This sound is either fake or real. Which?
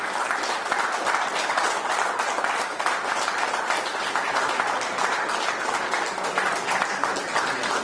real